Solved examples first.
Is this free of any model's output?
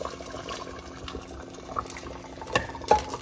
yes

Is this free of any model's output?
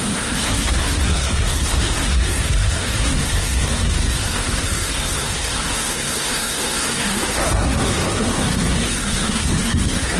no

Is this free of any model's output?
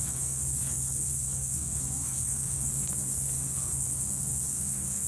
no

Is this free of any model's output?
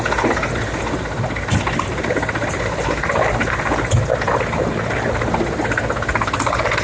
yes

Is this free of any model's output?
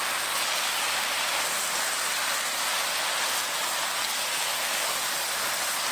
yes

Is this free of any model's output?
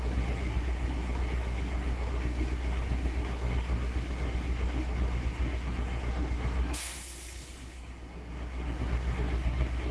no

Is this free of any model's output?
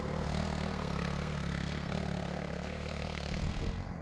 no